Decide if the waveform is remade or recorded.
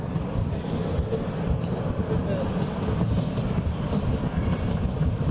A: recorded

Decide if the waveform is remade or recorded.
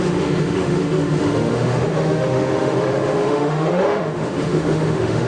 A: remade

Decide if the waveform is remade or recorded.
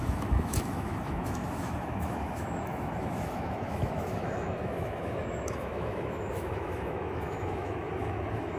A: remade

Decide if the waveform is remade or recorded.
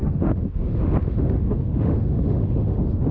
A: remade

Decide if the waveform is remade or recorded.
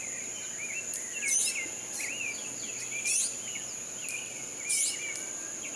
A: recorded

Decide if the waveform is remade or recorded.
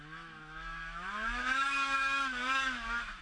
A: remade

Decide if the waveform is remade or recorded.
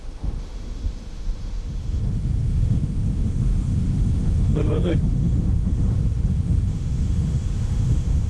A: remade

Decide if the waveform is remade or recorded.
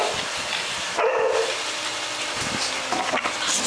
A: recorded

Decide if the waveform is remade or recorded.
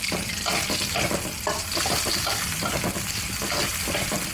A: recorded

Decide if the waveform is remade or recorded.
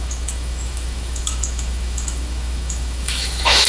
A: remade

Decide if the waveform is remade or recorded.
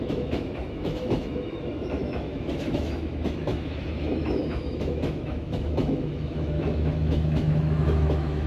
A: remade